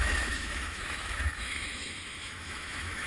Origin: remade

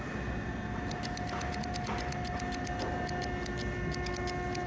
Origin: recorded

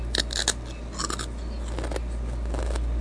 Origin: recorded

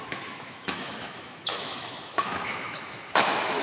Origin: remade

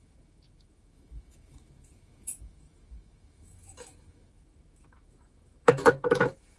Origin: remade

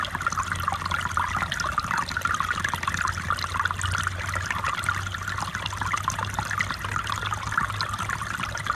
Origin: recorded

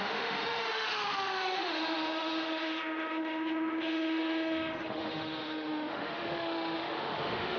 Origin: remade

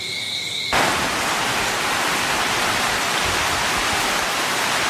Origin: recorded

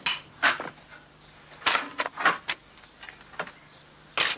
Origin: recorded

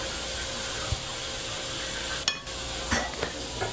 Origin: recorded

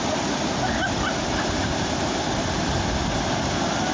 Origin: recorded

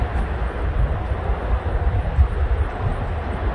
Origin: recorded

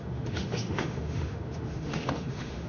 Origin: remade